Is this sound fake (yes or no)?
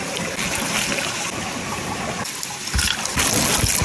no